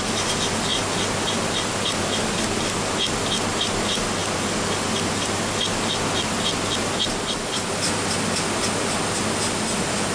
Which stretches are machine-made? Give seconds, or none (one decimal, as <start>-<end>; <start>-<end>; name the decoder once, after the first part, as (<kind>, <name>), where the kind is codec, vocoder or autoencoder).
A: none